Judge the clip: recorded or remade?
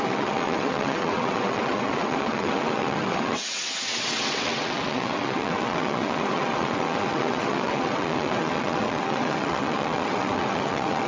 remade